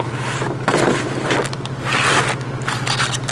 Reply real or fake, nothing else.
real